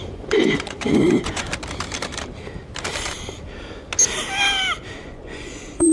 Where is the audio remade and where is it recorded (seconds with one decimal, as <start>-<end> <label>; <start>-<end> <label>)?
0.0-1.5 remade; 1.5-5.0 recorded; 5.0-5.9 remade